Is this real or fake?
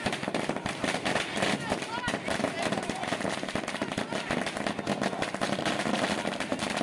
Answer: real